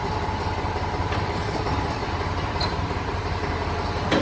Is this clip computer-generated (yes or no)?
yes